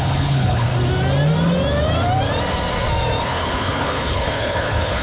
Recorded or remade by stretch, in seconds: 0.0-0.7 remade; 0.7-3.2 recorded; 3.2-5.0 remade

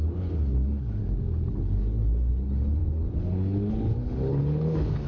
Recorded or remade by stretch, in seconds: 0.0-1.0 remade; 1.0-1.5 recorded; 1.5-5.1 remade

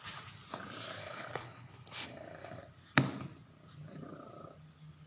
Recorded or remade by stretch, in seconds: 0.0-1.0 recorded; 1.0-2.6 remade; 2.6-5.1 recorded

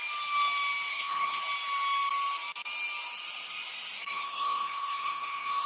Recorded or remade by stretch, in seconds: 0.0-0.9 recorded; 0.9-1.4 remade; 1.4-4.0 recorded; 4.0-5.7 remade

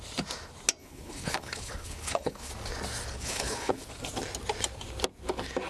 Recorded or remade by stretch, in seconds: 0.0-0.8 recorded; 0.8-2.5 remade; 2.5-3.1 recorded; 3.1-3.9 remade; 3.9-5.7 recorded

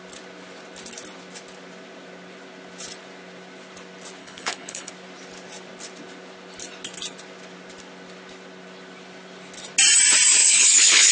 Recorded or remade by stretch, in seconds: 0.0-4.2 recorded; 4.2-4.9 remade; 4.9-10.4 recorded; 10.4-11.1 remade

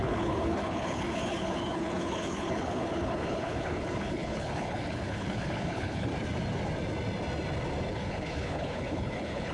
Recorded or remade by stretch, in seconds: 0.0-6.1 remade; 6.1-7.9 recorded; 7.9-9.5 remade

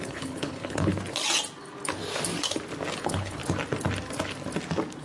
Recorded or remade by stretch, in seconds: 0.0-0.9 remade; 0.9-3.0 recorded; 3.0-3.4 remade; 3.4-5.0 recorded